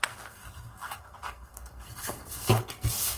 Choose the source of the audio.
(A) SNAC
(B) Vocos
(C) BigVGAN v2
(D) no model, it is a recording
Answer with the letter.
A